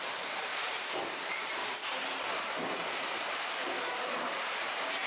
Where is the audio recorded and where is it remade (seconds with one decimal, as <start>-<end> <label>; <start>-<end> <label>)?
0.0-0.5 recorded; 0.5-1.0 remade; 1.0-1.6 recorded; 1.6-5.1 remade